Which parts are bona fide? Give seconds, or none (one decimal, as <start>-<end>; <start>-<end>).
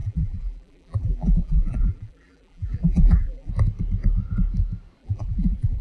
3.5-5.0